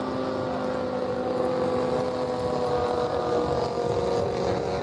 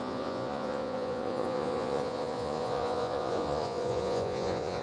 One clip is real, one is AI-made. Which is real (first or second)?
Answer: first